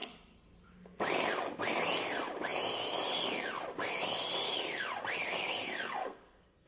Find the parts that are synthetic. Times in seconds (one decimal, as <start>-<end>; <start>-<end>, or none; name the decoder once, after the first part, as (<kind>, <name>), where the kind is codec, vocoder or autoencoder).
6.0-6.7 (codec, SNAC)